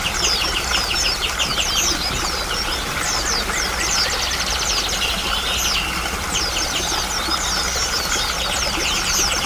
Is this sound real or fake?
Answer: real